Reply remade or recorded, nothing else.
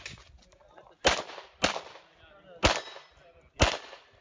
recorded